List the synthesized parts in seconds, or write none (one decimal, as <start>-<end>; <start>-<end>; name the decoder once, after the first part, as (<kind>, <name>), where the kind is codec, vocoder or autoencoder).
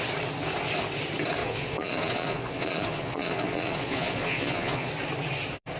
1.4-4.9 (vocoder, Vocos)